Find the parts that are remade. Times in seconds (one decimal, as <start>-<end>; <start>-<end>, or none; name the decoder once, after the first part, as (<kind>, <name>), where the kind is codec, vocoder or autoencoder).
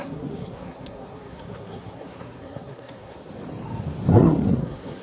0.0-3.2 (codec, SNAC); 4.1-5.0